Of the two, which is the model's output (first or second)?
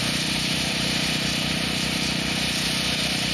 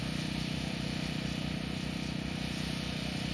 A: first